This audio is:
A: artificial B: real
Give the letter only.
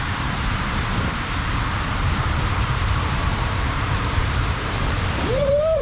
A